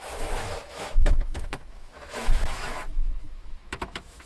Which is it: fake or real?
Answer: fake